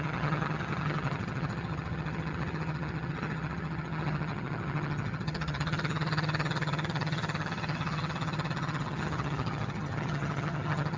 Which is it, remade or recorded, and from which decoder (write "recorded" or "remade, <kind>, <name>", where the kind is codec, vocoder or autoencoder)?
remade, vocoder, HiFi-GAN